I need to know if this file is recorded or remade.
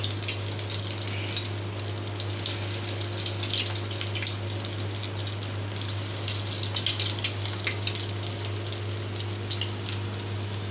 recorded